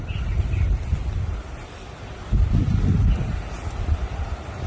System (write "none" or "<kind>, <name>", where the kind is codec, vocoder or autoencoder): none